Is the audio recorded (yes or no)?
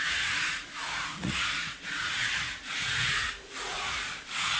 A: no